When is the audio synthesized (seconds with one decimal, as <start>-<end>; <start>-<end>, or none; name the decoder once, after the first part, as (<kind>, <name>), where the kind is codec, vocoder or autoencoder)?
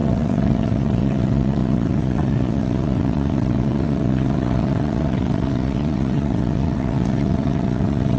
0.0-8.2 (vocoder, WaveNeXt)